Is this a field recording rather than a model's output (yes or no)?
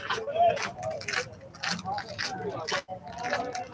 yes